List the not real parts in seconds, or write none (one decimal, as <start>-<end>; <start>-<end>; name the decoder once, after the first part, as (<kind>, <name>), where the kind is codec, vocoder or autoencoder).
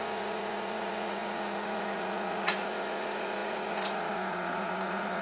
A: 0.0-5.2 (vocoder, Vocos)